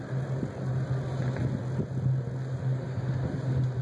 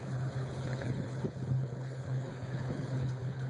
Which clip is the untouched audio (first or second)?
first